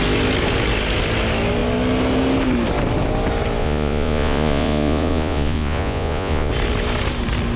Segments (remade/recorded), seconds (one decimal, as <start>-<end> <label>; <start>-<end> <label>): 0.0-3.6 recorded; 3.6-6.5 remade; 6.5-7.6 recorded